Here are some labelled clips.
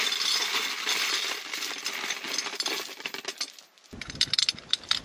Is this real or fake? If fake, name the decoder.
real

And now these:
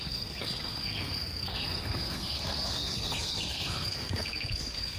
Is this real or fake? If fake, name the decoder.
fake, codec, SNAC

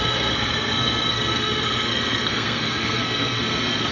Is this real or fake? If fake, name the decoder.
fake, codec, SNAC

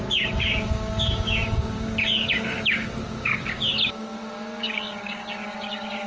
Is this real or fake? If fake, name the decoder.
fake, codec, DAC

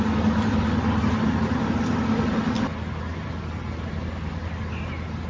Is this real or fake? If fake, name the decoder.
real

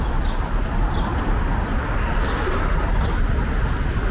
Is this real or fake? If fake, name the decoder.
real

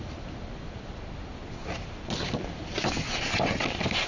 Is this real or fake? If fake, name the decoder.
real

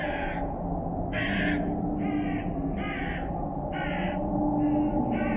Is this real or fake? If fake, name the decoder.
real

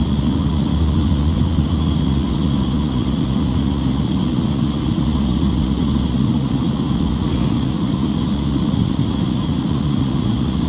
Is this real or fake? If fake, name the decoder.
fake, vocoder, Vocos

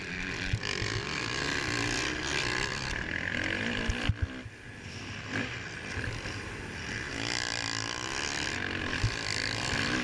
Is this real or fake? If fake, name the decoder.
real